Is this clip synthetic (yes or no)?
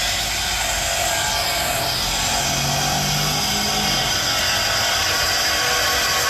no